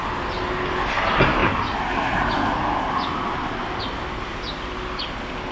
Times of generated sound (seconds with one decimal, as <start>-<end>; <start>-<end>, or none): none